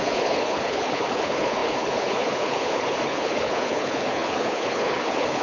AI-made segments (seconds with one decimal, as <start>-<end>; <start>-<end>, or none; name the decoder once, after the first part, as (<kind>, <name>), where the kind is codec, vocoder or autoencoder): 0.0-5.4 (codec, HILCodec)